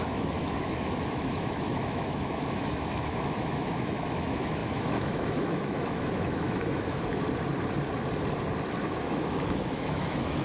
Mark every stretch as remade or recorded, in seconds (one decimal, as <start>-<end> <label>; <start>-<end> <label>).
0.0-7.1 remade; 7.1-8.8 recorded; 8.8-10.4 remade